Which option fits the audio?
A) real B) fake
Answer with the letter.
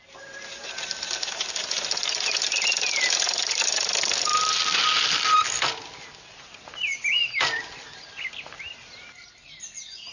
A